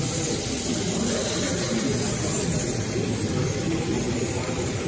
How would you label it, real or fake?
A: real